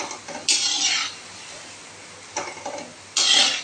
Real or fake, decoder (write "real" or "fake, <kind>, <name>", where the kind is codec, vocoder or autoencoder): real